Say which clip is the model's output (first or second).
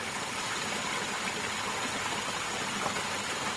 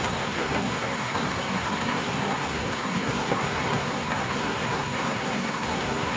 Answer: second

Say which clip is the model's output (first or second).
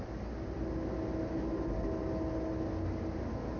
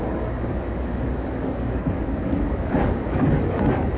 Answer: second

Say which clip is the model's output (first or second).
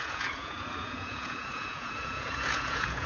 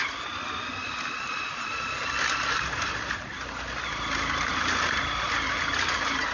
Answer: first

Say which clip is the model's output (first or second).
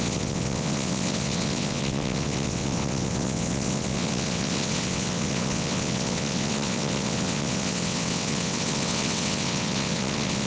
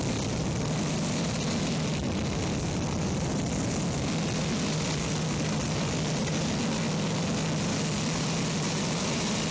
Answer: first